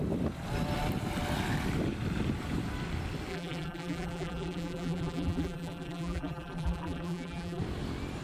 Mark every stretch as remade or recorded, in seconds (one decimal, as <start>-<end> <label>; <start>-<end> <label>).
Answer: 0.0-3.3 recorded; 3.3-7.6 remade; 7.6-8.2 recorded